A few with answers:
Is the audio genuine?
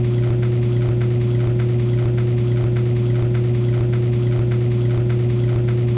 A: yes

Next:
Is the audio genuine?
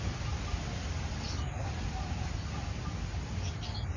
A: yes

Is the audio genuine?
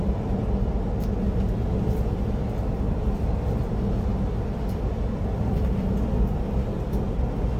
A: yes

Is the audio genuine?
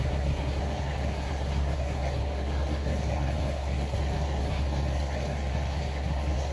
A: no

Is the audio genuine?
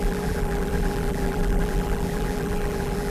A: no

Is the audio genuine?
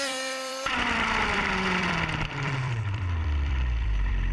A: no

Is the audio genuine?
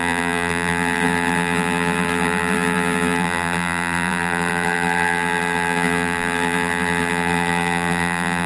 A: no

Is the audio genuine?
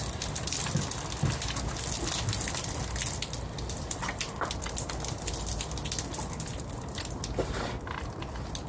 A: yes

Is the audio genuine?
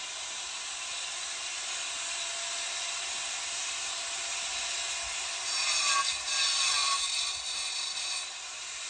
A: yes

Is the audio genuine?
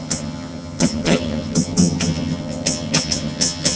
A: no